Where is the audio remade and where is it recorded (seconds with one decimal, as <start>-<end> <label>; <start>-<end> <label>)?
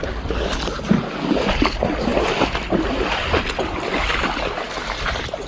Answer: 0.0-5.5 recorded